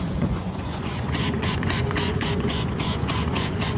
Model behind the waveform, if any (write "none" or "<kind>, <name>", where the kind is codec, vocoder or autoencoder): vocoder, Vocos